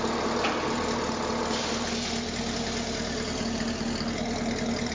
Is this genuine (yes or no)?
yes